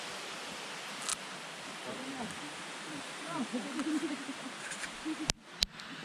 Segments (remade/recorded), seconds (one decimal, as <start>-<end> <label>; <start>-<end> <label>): 0.0-1.1 recorded; 1.1-2.4 remade; 2.4-6.0 recorded